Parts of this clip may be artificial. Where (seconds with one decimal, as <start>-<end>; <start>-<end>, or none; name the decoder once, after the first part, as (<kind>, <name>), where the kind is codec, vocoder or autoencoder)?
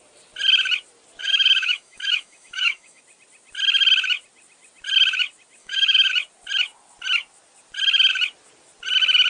1.2-3.0 (autoencoder, DAC-VAE); 5.6-6.1